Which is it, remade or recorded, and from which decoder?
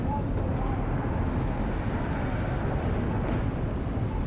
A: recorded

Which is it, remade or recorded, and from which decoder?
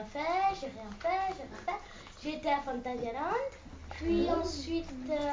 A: recorded